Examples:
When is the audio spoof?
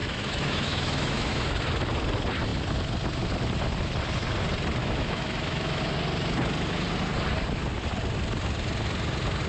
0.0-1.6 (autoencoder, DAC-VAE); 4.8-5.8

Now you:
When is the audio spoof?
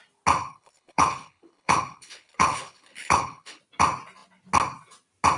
0.4-3.6 (codec, HILCodec)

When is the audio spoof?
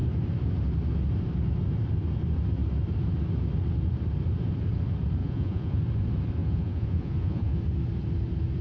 5.2-5.8 (vocoder, Vocos); 6.4-7.6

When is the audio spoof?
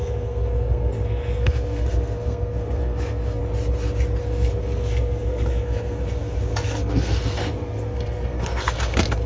0.0-3.4 (codec, SNAC); 4.2-9.3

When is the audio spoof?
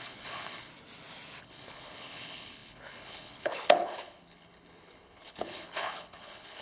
0.0-0.7 (codec, HILCodec); 1.4-6.6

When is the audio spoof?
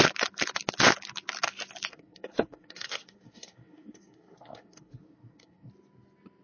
1.9-5.7 (codec, SNAC)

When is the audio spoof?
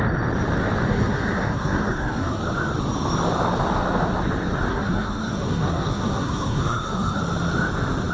0.9-2.4 (codec, SNAC); 4.7-7.2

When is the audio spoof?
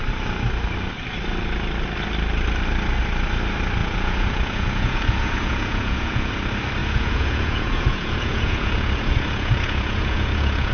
3.8-6.3 (vocoder, Vocos); 6.8-10.7